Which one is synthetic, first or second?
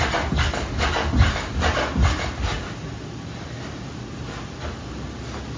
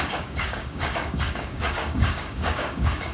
second